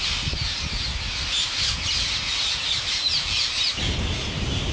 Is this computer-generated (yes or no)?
no